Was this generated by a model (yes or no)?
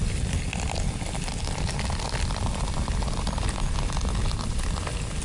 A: no